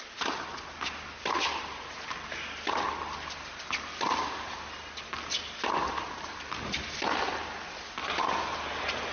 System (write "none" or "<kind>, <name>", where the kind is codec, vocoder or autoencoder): none